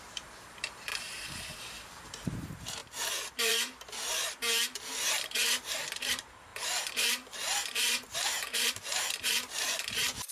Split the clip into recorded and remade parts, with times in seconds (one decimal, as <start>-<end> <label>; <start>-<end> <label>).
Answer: 0.0-2.8 remade; 2.8-3.3 recorded; 3.3-10.3 remade